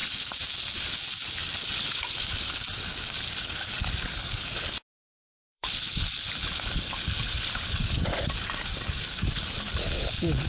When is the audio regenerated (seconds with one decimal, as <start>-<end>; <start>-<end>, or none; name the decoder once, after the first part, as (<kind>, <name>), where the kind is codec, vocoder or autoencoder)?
1.4-3.7 (vocoder, BigVGAN v2); 5.0-9.5